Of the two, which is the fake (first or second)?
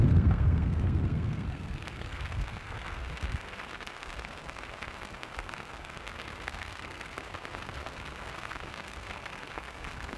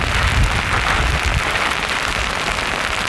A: first